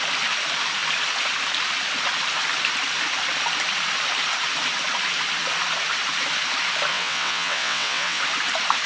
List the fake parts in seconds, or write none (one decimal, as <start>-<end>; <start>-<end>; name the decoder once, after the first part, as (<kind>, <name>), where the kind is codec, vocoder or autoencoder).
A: 6.9-8.2 (vocoder, WaveNeXt)